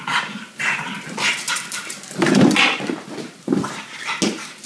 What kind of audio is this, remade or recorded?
recorded